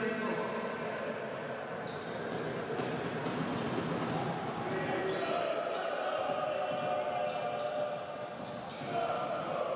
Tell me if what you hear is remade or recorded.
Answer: recorded